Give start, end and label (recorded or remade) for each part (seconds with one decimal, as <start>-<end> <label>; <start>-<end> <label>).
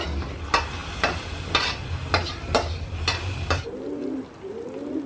0.0-5.1 recorded